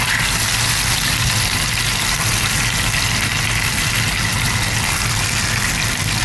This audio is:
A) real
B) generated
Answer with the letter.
A